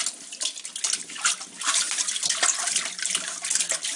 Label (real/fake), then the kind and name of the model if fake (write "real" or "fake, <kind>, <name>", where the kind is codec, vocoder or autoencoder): real